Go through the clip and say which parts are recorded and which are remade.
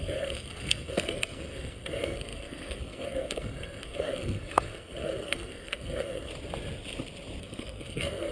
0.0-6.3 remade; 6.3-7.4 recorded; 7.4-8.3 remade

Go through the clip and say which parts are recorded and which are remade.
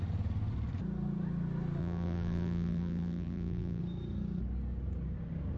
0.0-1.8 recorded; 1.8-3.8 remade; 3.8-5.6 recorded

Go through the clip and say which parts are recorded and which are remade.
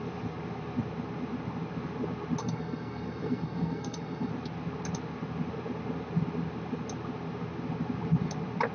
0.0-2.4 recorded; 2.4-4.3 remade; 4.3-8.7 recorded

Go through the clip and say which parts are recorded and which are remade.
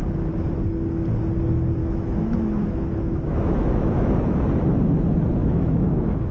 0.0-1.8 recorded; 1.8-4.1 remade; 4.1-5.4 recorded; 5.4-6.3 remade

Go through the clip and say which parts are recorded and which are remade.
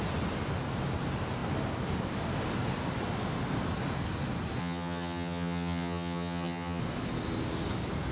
0.0-4.6 recorded; 4.6-6.8 remade; 6.8-8.1 recorded